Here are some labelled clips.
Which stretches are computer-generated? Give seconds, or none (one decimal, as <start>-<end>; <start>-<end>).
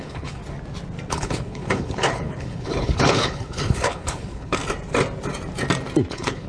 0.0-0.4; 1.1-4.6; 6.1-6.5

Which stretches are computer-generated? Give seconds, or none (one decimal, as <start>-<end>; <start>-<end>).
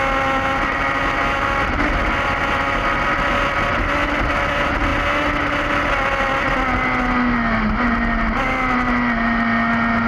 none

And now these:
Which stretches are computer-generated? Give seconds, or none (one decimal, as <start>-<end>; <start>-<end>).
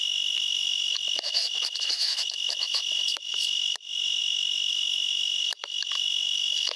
0.0-6.8